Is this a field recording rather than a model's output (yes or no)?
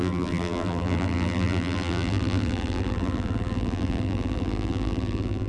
no